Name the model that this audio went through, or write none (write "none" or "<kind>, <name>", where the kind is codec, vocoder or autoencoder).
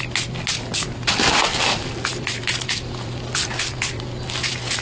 none